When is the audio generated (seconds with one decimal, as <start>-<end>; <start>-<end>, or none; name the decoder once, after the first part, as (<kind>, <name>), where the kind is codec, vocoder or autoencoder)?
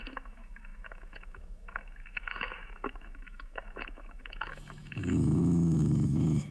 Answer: 0.0-6.5 (autoencoder, DAC-VAE)